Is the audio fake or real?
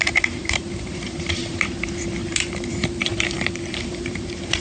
fake